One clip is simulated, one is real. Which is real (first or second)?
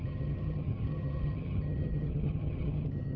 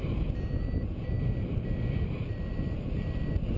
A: second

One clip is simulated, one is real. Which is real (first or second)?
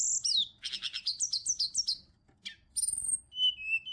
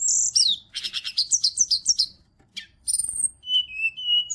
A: first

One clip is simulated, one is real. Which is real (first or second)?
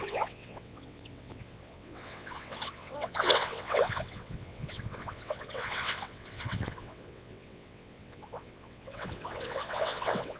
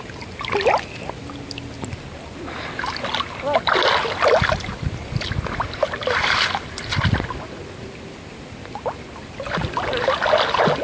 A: second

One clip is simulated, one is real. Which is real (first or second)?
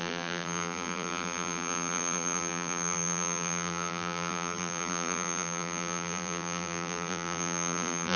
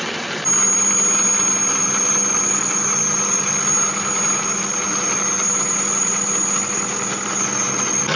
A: second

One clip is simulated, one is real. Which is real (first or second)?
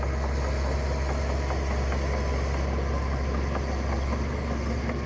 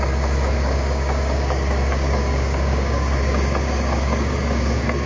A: first